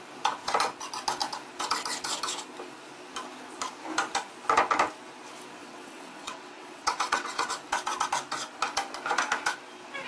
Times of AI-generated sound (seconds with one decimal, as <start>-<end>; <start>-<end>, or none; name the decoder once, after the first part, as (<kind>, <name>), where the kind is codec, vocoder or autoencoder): 5.6-7.5 (vocoder, WaveNeXt)